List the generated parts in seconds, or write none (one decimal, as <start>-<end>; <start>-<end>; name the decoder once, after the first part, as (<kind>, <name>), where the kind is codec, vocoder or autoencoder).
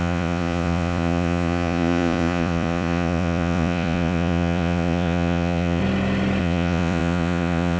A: 0.0-5.8 (vocoder, Vocos); 6.4-7.8